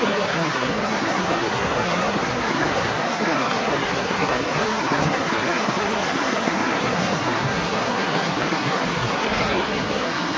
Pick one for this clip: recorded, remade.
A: remade